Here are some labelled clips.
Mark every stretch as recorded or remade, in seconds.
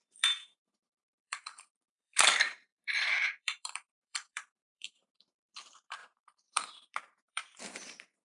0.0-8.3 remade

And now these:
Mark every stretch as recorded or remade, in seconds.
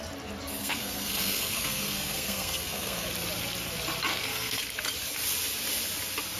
0.0-0.6 recorded; 0.6-3.1 remade; 3.1-4.1 recorded; 4.1-4.6 remade; 4.6-6.4 recorded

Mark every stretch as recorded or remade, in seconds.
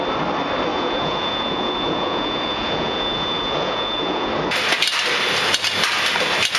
0.0-0.7 recorded; 0.7-4.3 remade; 4.3-6.6 recorded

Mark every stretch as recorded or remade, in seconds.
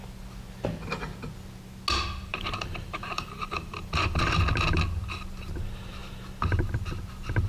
0.0-2.3 recorded; 2.3-4.3 remade; 4.3-7.5 recorded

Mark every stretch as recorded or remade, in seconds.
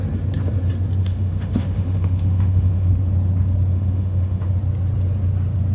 0.0-1.0 recorded; 1.0-2.9 remade; 2.9-3.7 recorded; 3.7-4.5 remade; 4.5-5.7 recorded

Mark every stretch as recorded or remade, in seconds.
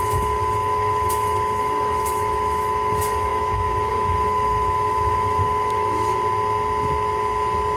0.0-6.1 remade; 6.1-7.8 recorded